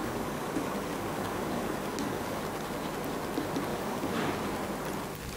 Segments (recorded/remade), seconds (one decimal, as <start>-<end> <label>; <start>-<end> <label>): 0.0-2.4 remade; 2.4-3.7 recorded; 3.7-4.3 remade; 4.3-5.4 recorded